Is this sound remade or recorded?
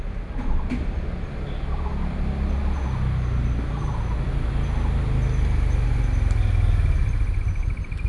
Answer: recorded